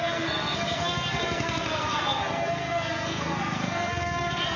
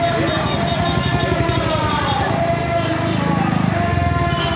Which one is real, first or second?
second